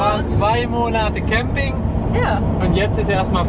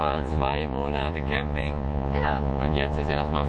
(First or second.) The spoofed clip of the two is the second